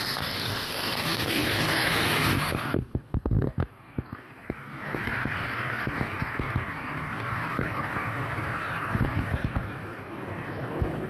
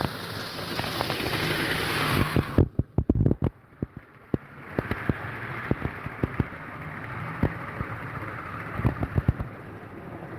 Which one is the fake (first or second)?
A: first